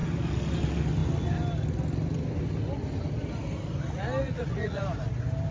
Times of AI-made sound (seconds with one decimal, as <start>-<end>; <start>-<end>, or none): 4.2-4.8